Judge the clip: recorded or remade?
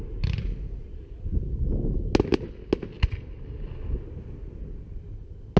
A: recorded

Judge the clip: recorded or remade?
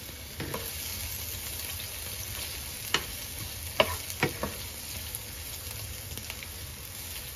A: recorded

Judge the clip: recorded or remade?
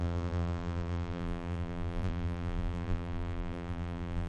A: remade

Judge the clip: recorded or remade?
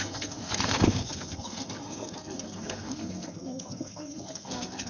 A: remade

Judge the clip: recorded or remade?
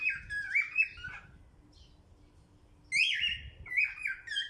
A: recorded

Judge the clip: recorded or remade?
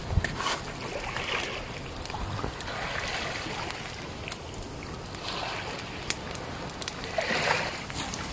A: recorded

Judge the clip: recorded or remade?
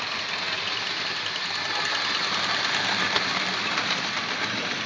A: recorded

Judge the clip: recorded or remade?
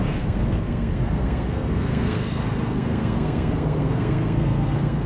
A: remade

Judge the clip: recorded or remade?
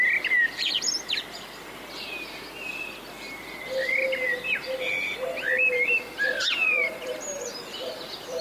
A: recorded